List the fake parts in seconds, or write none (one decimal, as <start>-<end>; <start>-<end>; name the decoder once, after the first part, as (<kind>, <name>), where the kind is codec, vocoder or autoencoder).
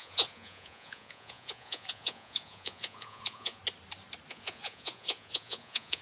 0.0-3.6 (vocoder, Vocos); 4.3-6.0